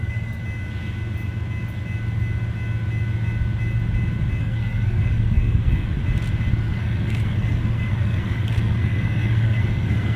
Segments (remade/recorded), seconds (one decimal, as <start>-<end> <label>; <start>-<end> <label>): 0.0-0.4 remade; 0.4-4.4 recorded; 4.4-6.0 remade; 6.0-6.5 recorded; 6.5-10.2 remade